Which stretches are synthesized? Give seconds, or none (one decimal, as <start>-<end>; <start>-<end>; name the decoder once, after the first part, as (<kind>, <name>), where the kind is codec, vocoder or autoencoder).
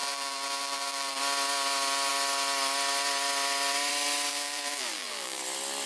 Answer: 0.0-1.2 (vocoder, BigVGAN v2); 4.3-5.4